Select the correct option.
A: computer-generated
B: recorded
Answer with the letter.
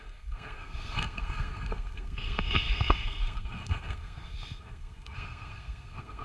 A